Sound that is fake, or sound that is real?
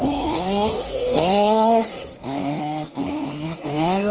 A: fake